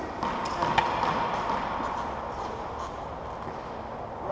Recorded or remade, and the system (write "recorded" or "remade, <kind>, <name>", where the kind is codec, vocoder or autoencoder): recorded